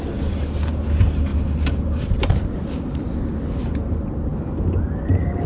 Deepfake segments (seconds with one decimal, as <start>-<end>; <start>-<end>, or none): none

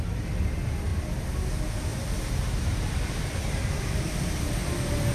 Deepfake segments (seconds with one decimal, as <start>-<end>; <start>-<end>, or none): 1.9-4.3

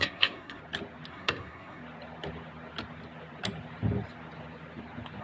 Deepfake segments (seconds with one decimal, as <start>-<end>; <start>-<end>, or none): 0.0-0.6; 1.1-1.8

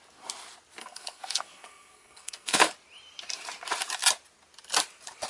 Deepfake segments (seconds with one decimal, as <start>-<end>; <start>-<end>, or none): 0.8-2.7

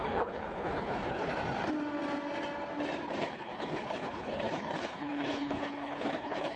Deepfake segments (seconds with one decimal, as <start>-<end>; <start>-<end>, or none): 0.0-1.3; 3.2-6.6

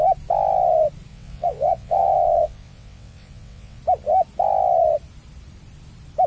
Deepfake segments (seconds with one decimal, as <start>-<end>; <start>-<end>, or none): 1.1-3.8